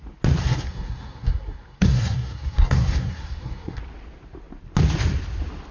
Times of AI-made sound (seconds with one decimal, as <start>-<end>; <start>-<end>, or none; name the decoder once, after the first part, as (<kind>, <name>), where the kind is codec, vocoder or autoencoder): 0.4-3.8 (codec, SNAC)